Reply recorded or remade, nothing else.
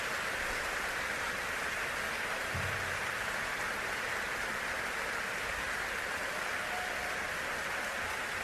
recorded